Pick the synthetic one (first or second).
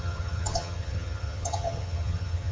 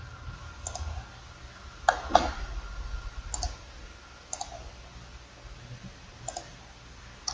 first